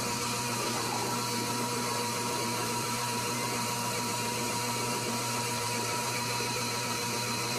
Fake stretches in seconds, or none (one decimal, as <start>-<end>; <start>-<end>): 0.0-7.6